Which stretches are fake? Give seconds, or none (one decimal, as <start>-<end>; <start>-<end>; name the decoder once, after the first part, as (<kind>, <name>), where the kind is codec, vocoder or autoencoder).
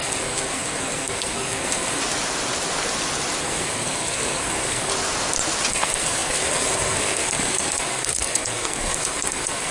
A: 0.0-2.0 (codec, SNAC); 3.4-4.9; 5.7-9.7